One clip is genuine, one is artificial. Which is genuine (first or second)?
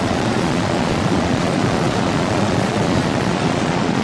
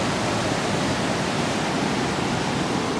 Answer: second